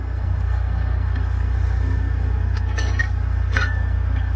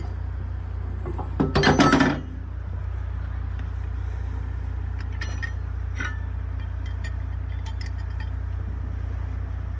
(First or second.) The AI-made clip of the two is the first